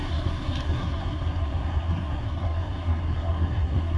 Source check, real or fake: fake